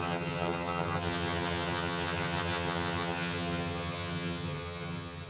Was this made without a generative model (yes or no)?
no